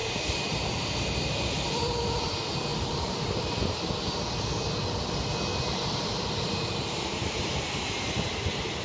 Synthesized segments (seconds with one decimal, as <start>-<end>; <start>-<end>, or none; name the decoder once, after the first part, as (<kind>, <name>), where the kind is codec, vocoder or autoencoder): 0.0-0.7 (vocoder, BigVGAN v2); 2.7-4.0; 5.5-8.3